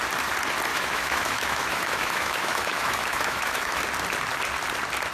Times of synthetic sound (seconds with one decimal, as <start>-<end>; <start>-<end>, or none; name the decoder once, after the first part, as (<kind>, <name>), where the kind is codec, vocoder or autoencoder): 0.7-3.8 (autoencoder, DAC-VAE)